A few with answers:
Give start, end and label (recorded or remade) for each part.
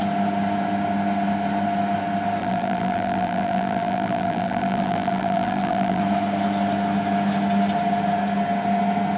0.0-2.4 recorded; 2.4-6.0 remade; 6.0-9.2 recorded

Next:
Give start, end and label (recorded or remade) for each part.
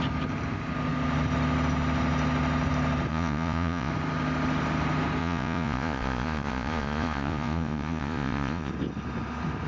0.0-3.1 recorded; 3.1-3.9 remade; 3.9-5.2 recorded; 5.2-8.7 remade; 8.7-9.7 recorded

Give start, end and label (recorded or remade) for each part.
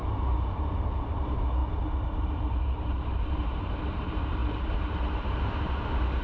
0.0-1.6 remade; 1.6-2.6 recorded; 2.6-6.2 remade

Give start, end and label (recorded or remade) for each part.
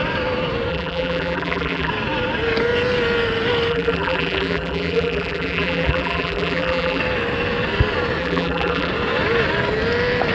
0.0-0.7 recorded; 0.7-1.9 remade; 1.9-3.7 recorded; 3.7-7.0 remade; 7.0-8.2 recorded; 8.2-8.9 remade; 8.9-10.3 recorded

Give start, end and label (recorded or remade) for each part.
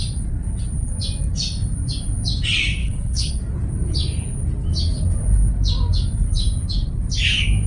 0.0-2.8 recorded; 2.8-3.3 remade; 3.3-7.7 recorded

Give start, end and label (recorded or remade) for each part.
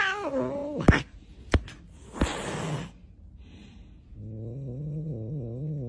0.0-5.9 recorded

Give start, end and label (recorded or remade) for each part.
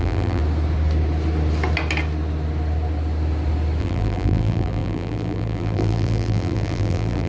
0.0-0.4 remade; 0.4-3.8 recorded; 3.8-7.3 remade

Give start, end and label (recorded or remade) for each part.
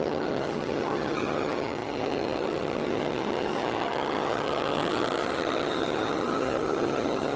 0.0-7.4 remade